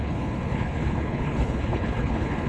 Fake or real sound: fake